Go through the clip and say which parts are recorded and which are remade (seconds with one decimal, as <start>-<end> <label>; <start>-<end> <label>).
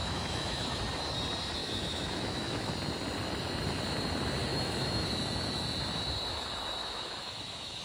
0.0-0.8 remade; 0.8-1.6 recorded; 1.6-2.7 remade; 2.7-4.5 recorded; 4.5-5.2 remade; 5.2-6.8 recorded; 6.8-7.8 remade